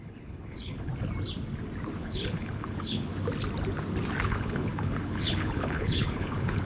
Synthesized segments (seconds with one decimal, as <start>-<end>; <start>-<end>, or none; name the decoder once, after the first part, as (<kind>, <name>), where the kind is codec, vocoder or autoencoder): 0.0-0.9 (codec, HILCodec); 2.0-3.1; 4.2-6.6